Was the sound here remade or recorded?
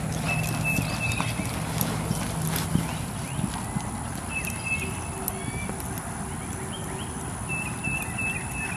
recorded